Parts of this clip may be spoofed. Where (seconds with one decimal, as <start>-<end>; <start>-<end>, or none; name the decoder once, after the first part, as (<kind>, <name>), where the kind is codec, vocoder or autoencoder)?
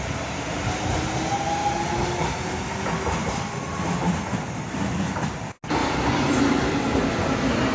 none